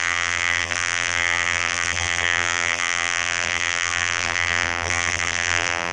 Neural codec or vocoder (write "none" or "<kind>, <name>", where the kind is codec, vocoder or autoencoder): vocoder, BigVGAN v2